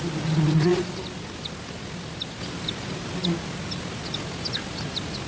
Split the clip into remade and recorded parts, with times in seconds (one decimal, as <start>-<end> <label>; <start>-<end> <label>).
0.0-5.3 recorded